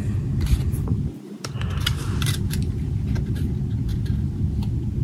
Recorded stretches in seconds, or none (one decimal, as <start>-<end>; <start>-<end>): 0.0-0.9; 3.5-3.9; 4.5-5.0